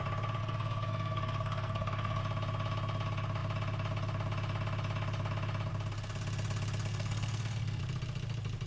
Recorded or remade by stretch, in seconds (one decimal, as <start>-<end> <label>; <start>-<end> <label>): 0.0-0.4 recorded; 0.4-2.2 remade; 2.2-6.9 recorded; 6.9-7.8 remade; 7.8-8.7 recorded

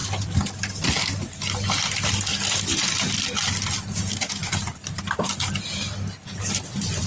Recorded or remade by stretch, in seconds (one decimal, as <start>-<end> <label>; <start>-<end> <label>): 0.0-2.3 recorded; 2.3-3.8 remade; 3.8-4.4 recorded; 4.4-5.0 remade; 5.0-7.1 recorded

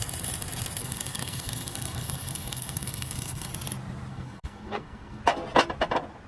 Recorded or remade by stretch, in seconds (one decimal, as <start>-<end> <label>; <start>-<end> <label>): 0.0-0.8 recorded; 0.8-3.5 remade; 3.5-4.1 recorded; 4.1-5.2 remade; 5.2-6.3 recorded

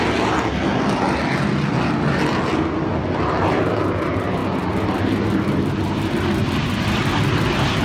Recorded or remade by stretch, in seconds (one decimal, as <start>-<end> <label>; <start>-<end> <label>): 0.0-7.8 recorded